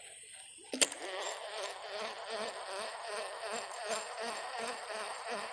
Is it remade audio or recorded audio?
recorded